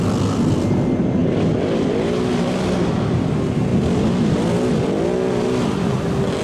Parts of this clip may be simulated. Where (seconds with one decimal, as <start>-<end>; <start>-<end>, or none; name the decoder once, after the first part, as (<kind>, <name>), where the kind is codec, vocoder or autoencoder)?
none